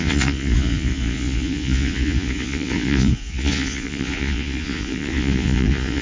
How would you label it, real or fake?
fake